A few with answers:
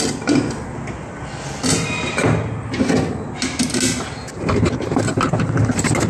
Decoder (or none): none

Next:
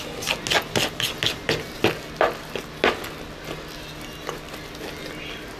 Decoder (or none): none